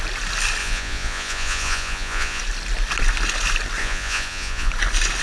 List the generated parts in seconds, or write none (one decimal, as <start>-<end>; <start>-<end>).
0.6-2.4; 3.8-4.7